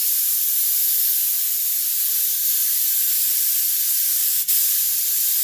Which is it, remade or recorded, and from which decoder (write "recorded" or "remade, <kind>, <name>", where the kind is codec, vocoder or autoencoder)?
recorded